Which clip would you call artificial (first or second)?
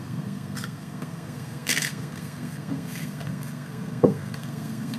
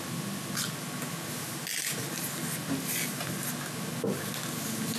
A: first